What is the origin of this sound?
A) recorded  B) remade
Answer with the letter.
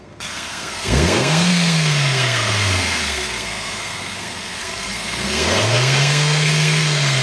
B